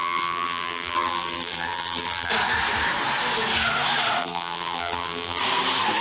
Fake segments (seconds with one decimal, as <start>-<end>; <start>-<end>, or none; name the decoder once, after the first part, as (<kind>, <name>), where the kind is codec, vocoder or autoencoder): 0.0-2.3 (vocoder, BigVGAN v2); 4.2-5.4